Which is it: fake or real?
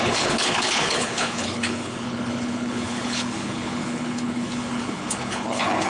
fake